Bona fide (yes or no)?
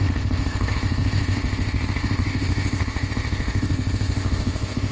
no